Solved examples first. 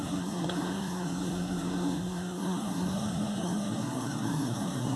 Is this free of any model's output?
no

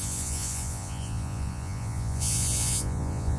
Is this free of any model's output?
no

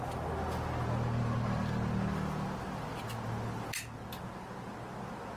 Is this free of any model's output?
yes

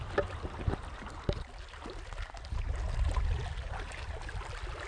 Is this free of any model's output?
yes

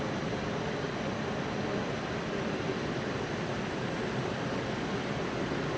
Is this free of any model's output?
yes